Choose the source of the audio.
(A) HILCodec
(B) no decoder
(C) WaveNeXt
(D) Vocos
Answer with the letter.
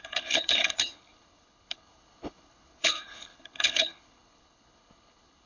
A